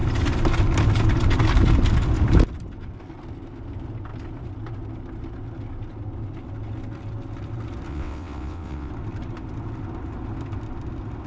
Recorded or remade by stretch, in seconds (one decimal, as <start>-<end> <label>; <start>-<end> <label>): 0.0-7.9 recorded; 7.9-8.9 remade; 8.9-11.3 recorded